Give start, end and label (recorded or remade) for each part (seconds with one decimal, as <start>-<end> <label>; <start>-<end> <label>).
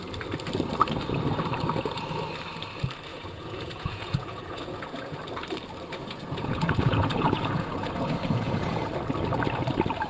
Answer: 0.0-3.1 recorded; 3.1-5.2 remade; 5.2-6.0 recorded; 6.0-8.8 remade; 8.8-10.1 recorded